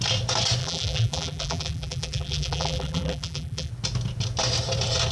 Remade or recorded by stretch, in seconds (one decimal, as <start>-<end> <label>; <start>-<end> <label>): 0.0-0.6 recorded; 0.6-3.7 remade; 3.7-5.1 recorded